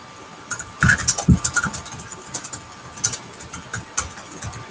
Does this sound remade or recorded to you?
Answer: recorded